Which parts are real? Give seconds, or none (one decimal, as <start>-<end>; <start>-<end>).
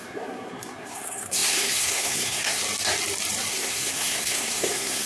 2.6-3.5